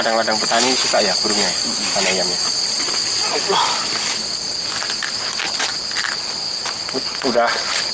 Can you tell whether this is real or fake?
real